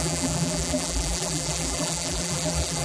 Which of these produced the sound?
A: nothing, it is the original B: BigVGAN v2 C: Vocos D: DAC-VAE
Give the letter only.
B